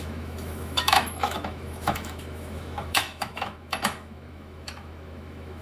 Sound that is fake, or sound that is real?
fake